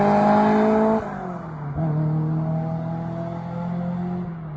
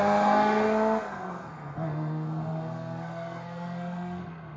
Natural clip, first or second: first